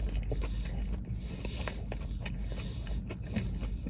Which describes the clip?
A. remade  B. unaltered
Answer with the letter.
B